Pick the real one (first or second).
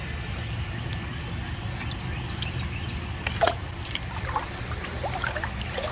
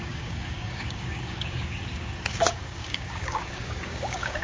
first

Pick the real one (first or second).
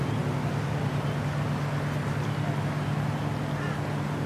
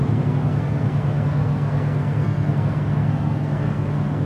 first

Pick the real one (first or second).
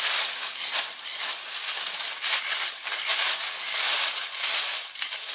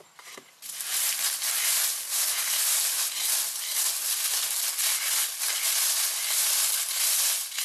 second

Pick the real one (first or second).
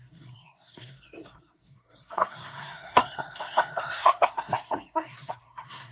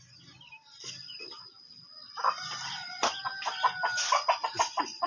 second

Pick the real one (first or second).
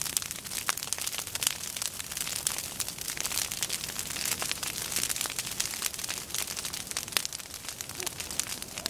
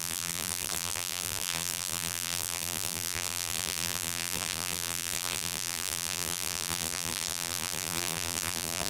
first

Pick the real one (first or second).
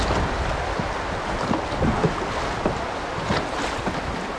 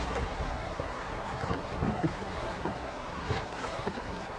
first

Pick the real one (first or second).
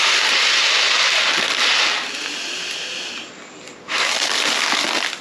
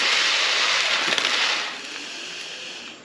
first